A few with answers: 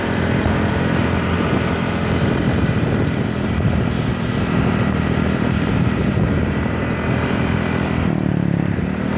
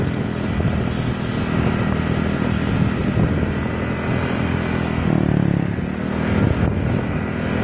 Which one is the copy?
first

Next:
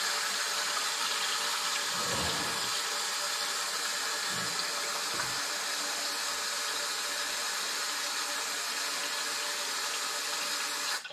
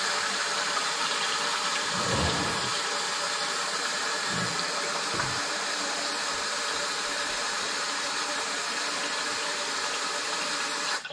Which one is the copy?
second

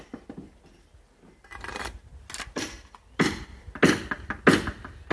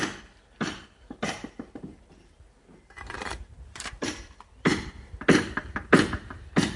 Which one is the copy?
second